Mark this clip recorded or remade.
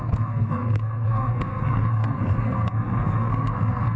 remade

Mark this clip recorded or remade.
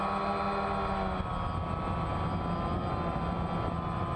recorded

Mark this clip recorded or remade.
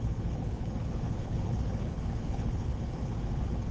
remade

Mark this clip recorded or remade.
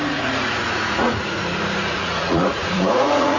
remade